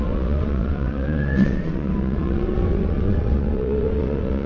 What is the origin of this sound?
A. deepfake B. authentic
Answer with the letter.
A